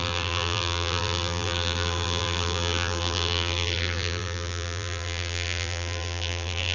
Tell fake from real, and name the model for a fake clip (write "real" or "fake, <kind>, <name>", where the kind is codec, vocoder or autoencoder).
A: fake, vocoder, BigVGAN v2